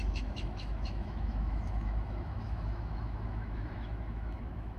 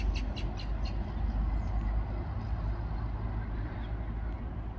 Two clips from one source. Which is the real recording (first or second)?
second